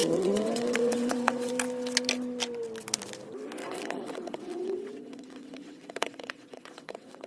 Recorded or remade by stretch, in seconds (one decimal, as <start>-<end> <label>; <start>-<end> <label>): 0.0-1.5 remade; 1.5-3.6 recorded; 3.6-7.3 remade